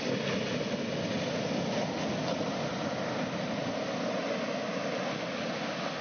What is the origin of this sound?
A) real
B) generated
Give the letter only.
A